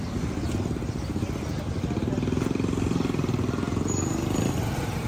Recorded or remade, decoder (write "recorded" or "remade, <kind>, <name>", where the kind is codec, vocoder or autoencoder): recorded